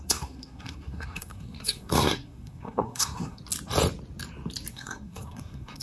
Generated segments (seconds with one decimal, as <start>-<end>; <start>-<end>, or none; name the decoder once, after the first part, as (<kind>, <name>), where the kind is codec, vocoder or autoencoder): 0.0-3.4 (codec, SNAC); 4.7-5.8